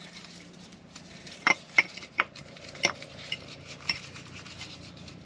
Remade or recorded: remade